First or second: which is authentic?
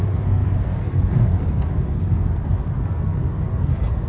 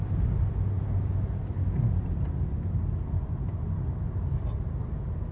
second